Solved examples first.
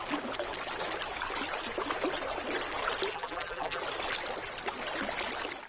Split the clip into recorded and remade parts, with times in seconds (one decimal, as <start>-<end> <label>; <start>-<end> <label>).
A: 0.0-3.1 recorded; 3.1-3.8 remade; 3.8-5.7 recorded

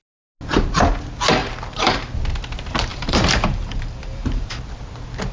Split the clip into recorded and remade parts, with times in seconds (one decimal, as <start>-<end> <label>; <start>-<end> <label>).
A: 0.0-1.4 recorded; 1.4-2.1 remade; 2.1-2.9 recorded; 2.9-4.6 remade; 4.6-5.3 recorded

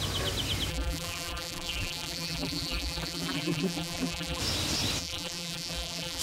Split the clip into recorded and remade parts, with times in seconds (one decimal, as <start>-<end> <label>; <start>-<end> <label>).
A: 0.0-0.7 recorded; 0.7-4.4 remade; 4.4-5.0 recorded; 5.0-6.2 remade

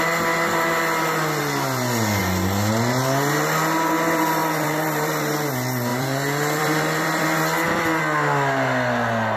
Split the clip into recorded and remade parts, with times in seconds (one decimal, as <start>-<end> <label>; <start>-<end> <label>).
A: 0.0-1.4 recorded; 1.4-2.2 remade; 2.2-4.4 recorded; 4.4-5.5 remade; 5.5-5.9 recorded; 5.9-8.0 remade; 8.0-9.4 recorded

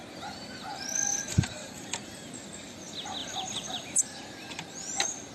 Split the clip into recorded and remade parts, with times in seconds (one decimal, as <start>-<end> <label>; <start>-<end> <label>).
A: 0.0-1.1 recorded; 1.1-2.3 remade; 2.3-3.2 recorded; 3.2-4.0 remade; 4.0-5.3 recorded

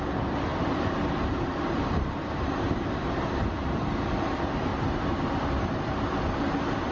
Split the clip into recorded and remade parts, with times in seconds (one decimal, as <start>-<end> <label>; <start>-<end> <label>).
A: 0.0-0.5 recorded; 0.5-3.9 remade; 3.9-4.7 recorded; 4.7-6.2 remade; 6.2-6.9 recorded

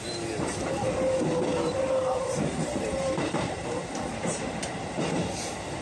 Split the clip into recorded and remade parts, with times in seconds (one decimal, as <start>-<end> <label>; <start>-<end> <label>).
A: 0.0-1.5 recorded; 1.5-5.0 remade; 5.0-5.8 recorded